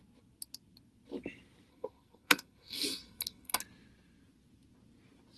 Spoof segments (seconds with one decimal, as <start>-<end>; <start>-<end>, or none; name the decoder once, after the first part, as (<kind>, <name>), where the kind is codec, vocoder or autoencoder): 1.7-3.6 (codec, SNAC)